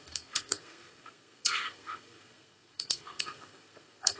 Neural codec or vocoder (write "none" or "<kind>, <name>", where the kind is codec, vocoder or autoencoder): codec, SNAC